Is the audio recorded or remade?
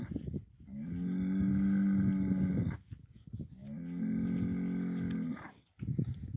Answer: recorded